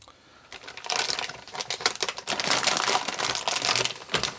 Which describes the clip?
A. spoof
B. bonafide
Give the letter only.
B